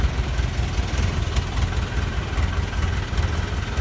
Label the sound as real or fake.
real